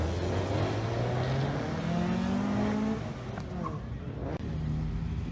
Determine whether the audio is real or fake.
real